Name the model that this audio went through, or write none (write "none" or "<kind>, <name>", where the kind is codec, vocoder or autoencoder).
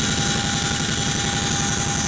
none